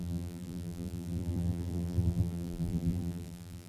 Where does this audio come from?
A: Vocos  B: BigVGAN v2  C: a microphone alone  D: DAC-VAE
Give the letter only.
B